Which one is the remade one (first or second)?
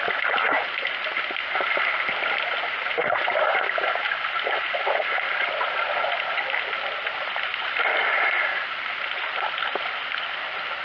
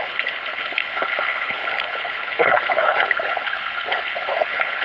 second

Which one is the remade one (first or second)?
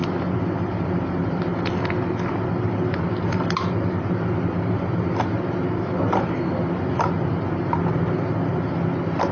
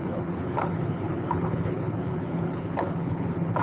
second